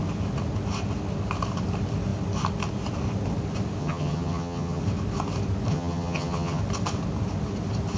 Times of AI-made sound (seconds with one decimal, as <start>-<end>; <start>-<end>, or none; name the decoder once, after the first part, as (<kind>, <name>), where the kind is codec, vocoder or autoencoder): 3.8-4.8 (vocoder, HiFi-GAN); 5.7-6.6